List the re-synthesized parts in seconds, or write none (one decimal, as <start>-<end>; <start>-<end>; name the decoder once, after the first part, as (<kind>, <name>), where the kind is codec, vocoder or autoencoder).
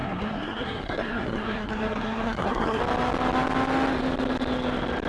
0.0-2.8 (codec, SNAC)